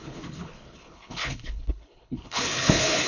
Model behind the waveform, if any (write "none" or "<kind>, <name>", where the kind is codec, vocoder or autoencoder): codec, HILCodec